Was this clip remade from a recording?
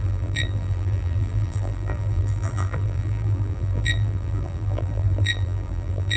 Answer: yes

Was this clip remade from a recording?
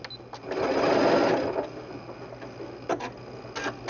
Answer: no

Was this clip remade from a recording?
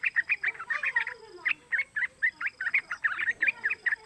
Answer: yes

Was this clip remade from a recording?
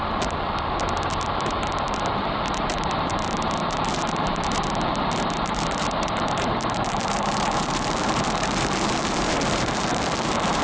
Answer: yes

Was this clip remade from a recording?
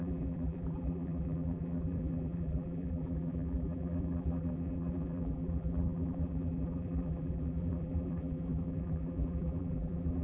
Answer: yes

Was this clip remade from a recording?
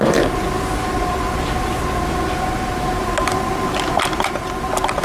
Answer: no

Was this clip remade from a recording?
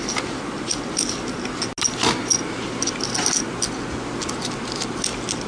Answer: no